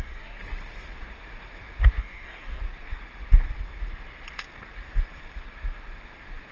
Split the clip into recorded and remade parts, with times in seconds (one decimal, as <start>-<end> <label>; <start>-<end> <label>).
0.0-0.4 remade; 0.4-2.0 recorded; 2.0-2.6 remade; 2.6-6.5 recorded